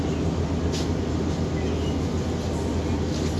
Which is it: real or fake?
real